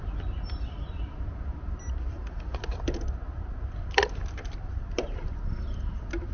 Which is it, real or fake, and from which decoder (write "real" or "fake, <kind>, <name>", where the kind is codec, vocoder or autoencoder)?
real